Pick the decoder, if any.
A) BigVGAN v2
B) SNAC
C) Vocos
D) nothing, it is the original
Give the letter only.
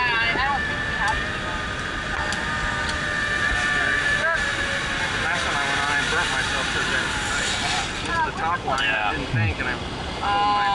D